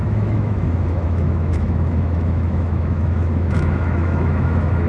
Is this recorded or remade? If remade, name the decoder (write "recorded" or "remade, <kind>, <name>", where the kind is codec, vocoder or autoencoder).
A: remade, autoencoder, DAC-VAE